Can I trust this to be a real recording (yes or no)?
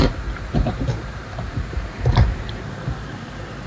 no